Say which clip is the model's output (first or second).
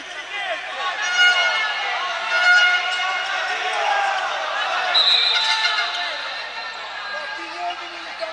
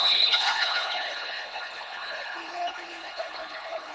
second